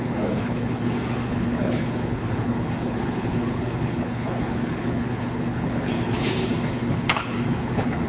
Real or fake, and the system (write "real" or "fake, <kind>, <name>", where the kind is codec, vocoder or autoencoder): fake, codec, HILCodec